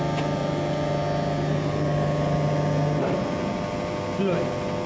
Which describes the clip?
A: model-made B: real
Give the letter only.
B